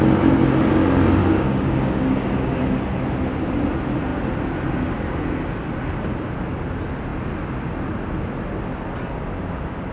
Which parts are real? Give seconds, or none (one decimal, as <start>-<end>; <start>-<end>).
0.0-1.2; 2.6-9.9